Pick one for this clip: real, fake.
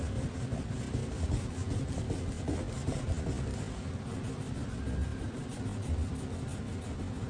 real